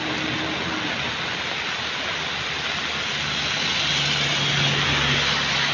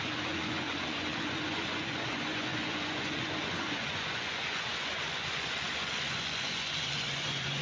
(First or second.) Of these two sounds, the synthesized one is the second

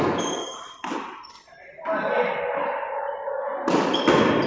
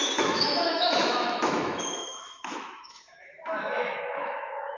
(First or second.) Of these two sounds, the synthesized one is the second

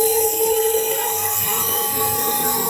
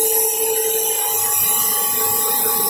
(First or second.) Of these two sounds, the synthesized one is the first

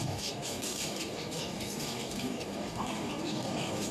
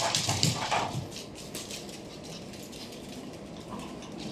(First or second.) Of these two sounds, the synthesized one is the first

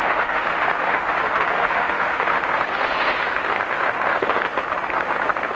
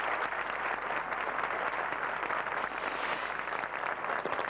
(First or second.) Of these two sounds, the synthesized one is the first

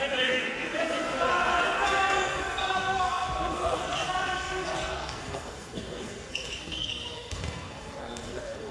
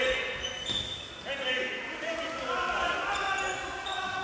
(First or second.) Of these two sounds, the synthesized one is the first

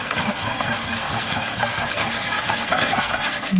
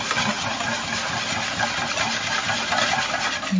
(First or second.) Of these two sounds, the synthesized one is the first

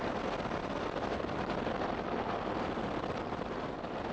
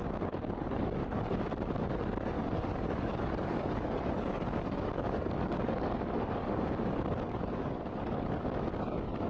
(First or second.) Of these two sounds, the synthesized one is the second